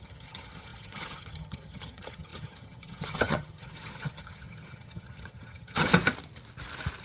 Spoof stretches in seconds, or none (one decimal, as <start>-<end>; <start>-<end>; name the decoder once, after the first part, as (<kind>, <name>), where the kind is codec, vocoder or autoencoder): 0.0-5.9 (vocoder, HiFi-GAN)